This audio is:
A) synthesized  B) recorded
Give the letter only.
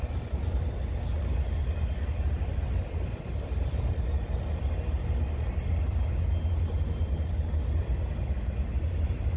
B